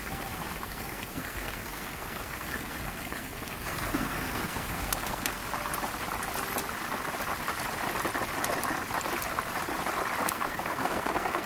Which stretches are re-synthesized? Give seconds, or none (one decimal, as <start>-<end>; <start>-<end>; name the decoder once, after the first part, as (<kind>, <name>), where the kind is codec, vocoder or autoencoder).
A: 0.0-5.4 (codec, SNAC); 10.2-11.5